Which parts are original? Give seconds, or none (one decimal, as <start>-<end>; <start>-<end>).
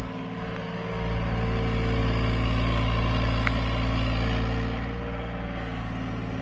0.0-6.4